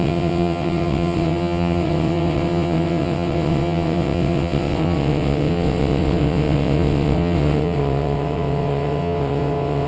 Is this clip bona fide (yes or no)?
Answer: no